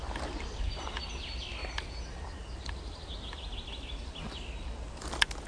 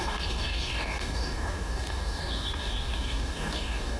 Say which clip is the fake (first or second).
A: second